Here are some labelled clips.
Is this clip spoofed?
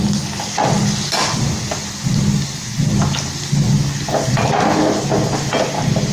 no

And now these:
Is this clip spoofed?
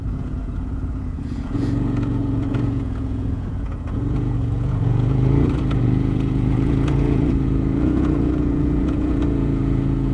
yes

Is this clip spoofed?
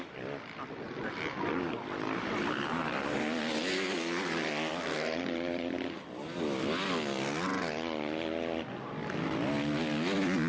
no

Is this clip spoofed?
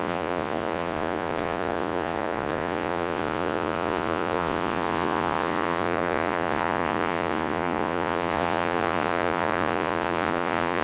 yes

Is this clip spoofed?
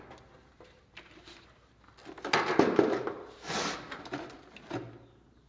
no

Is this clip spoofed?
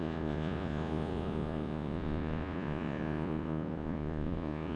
yes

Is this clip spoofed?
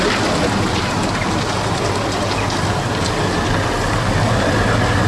no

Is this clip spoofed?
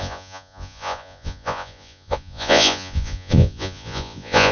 yes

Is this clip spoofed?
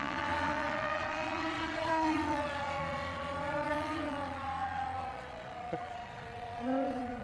yes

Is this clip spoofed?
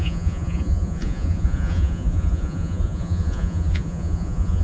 yes